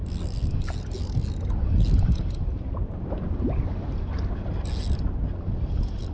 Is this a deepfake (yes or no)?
no